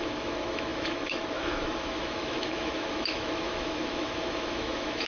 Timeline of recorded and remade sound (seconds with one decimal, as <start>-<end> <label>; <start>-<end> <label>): 0.0-5.1 remade